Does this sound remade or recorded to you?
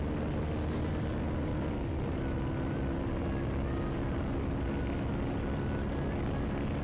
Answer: recorded